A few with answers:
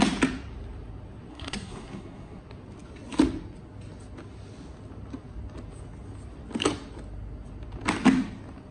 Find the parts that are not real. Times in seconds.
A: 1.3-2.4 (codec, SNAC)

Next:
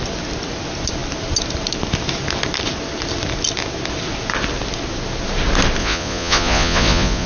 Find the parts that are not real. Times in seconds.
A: 5.8-7.3 (vocoder, Vocos)

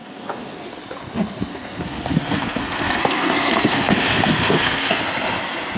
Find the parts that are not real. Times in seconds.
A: 0.0-0.8 (codec, SNAC); 1.5-5.0

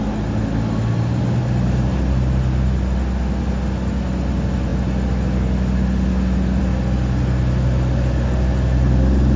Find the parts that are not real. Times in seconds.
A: none

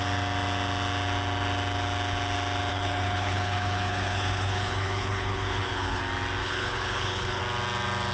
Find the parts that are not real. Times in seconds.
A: 2.7-6.0 (codec, HILCodec); 6.4-7.4

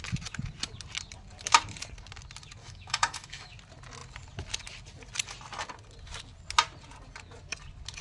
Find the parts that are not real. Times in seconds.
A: 2.6-3.5 (autoencoder, DAC-VAE)